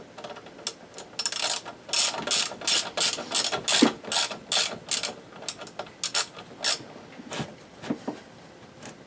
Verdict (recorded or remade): recorded